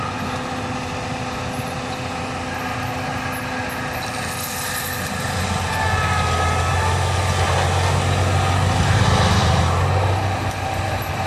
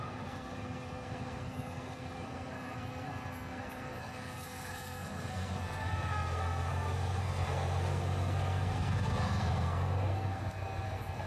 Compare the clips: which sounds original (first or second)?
first